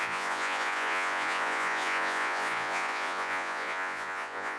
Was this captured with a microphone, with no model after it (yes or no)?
no